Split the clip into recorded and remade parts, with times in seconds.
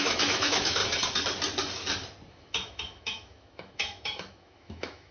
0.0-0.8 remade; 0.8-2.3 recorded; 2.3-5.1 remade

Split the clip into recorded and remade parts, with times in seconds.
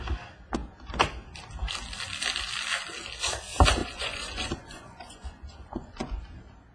0.0-3.8 recorded; 3.8-6.2 remade; 6.2-6.7 recorded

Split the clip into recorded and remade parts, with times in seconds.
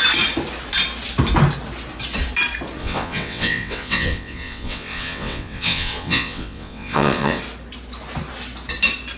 0.0-2.8 recorded; 2.8-7.4 remade; 7.4-9.2 recorded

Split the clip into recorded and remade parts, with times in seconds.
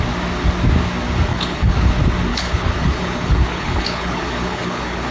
0.0-1.3 recorded; 1.3-1.9 remade; 1.9-2.3 recorded; 2.3-5.1 remade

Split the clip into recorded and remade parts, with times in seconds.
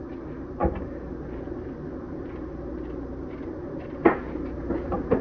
0.0-5.2 recorded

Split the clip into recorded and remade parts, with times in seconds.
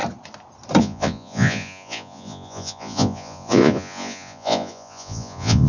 0.0-0.8 recorded; 0.8-5.7 remade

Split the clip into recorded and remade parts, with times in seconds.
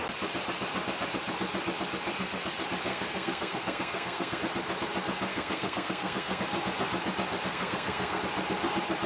0.0-2.9 recorded; 2.9-4.4 remade; 4.4-5.3 recorded; 5.3-6.4 remade; 6.4-7.5 recorded; 7.5-8.2 remade; 8.2-9.1 recorded